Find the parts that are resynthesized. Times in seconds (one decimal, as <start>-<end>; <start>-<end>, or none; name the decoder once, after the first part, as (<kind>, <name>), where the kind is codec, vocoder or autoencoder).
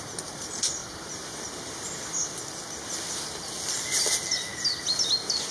none